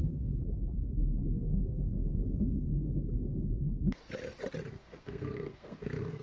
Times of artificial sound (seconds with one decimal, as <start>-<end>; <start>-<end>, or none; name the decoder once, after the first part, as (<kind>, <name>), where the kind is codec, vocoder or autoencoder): 0.0-4.0 (codec, SNAC); 4.7-6.2